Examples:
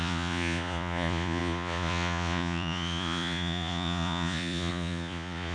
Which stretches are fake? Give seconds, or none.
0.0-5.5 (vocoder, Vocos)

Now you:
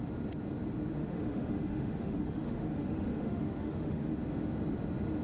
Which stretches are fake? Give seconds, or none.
1.0-4.1 (autoencoder, DAC-VAE)

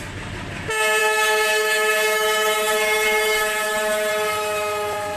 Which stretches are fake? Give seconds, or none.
1.0-4.1 (autoencoder, DAC-VAE)

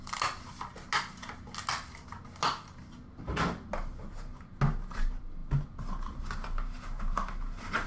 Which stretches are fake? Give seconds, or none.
none

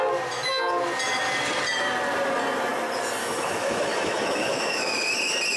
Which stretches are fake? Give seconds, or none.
3.2-5.0 (autoencoder, DAC-VAE)

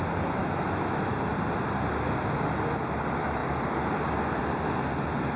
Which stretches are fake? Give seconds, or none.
0.4-1.1 (autoencoder, DAC-VAE)

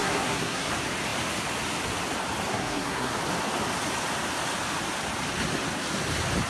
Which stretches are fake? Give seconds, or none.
0.0-0.7 (codec, SNAC); 2.5-3.1

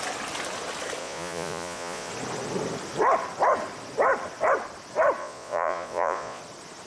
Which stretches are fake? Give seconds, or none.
1.0-2.1 (vocoder, Vocos); 5.2-6.4